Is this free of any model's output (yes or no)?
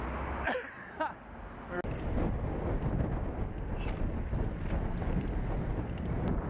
yes